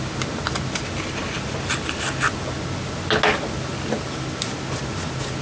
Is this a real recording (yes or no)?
yes